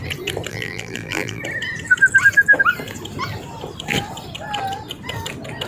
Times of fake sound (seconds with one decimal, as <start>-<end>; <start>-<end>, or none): 0.5-1.4